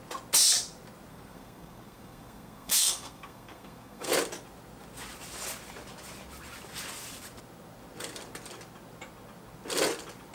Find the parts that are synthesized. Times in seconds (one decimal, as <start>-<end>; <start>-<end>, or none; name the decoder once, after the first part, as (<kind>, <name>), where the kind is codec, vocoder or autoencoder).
1.1-4.1 (codec, SNAC)